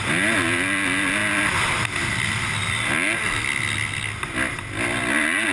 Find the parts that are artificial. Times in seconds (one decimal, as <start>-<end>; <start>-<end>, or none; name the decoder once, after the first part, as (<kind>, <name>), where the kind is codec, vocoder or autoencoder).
none